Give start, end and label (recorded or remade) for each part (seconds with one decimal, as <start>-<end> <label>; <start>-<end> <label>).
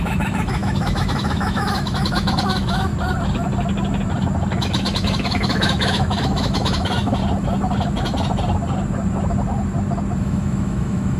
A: 0.0-2.9 remade; 2.9-4.6 recorded; 4.6-7.2 remade; 7.2-10.2 recorded; 10.2-11.2 remade